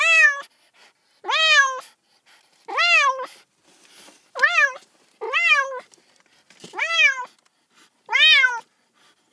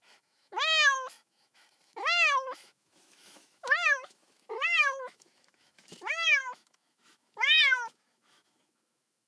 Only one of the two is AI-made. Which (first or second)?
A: second